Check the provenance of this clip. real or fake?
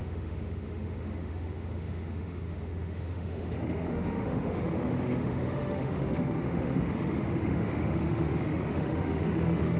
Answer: fake